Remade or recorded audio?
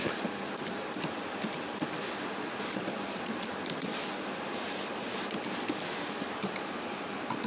recorded